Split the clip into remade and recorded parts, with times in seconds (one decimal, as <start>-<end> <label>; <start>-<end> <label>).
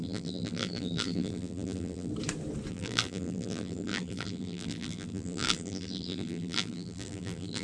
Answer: 0.0-2.1 remade; 2.1-2.7 recorded; 2.7-7.6 remade